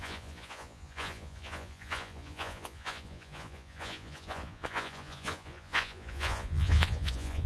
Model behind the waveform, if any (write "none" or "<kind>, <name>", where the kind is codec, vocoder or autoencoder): vocoder, Vocos